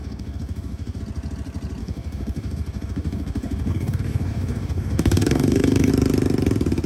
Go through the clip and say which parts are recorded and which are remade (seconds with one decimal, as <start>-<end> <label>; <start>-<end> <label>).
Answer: 0.0-1.0 remade; 1.0-1.8 recorded; 1.8-5.9 remade; 5.9-6.9 recorded